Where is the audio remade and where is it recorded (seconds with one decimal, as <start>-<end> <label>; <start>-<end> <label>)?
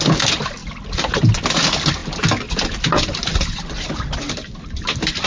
0.0-5.3 recorded